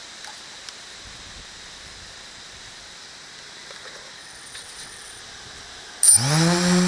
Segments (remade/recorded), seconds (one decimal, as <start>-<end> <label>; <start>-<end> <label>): 0.0-4.2 recorded; 4.2-5.2 remade; 5.2-6.9 recorded